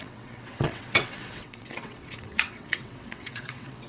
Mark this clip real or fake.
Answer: fake